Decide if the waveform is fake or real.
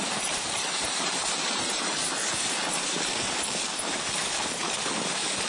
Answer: fake